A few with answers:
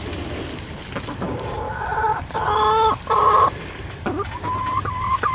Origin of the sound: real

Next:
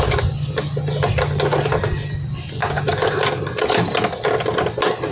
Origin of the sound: real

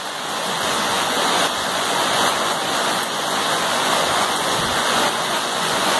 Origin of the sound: fake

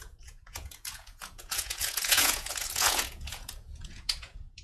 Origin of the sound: fake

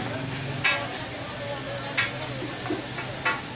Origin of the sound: real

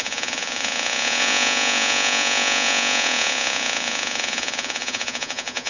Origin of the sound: fake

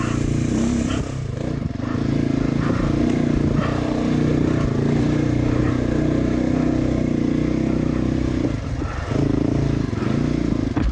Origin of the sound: real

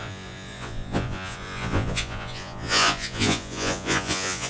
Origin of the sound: fake